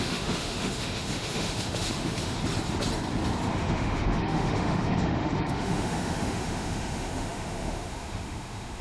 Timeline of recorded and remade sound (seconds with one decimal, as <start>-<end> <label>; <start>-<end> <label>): 0.0-2.4 remade; 2.4-3.5 recorded; 3.5-8.8 remade